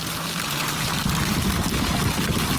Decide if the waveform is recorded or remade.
recorded